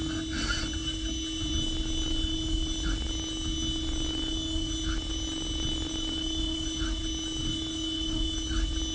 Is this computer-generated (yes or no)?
no